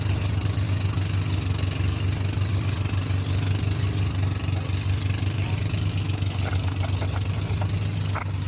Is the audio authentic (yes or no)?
yes